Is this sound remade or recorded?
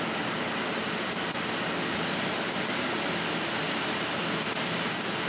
recorded